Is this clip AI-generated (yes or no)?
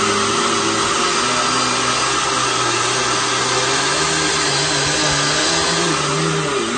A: no